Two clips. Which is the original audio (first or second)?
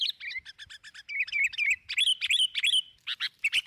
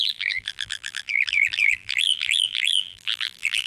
first